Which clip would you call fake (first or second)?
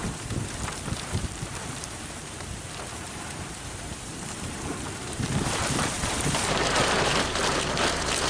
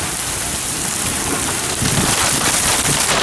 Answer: first